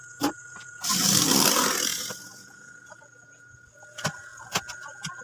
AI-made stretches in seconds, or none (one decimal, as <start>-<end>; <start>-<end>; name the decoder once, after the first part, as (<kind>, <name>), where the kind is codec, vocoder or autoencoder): none